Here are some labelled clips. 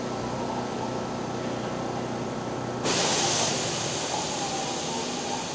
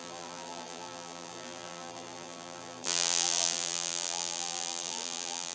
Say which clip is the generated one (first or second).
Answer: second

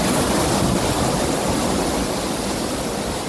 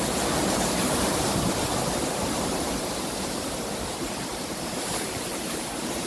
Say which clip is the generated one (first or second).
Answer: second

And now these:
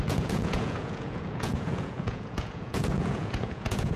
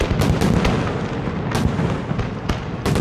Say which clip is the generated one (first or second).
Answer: first